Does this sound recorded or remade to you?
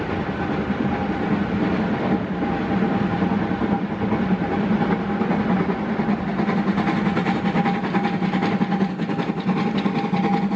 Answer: recorded